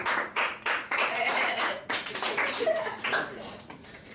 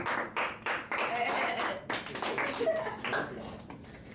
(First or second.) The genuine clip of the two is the second